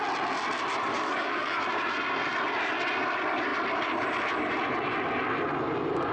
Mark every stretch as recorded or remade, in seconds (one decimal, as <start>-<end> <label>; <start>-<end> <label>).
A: 0.0-0.9 recorded; 0.9-1.6 remade; 1.6-6.1 recorded